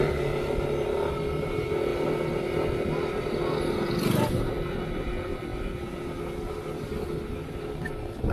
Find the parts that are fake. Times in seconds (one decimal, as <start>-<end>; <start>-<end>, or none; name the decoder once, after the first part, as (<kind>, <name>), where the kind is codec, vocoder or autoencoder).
none